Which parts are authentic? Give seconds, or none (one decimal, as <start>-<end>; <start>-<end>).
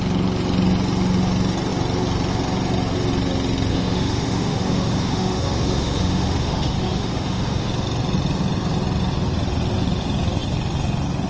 0.0-3.7; 7.7-11.3